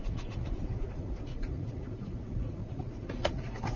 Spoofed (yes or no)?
yes